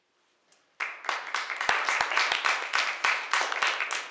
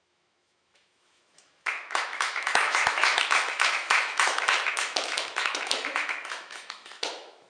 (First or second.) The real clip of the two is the first